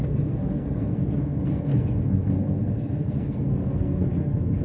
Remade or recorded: remade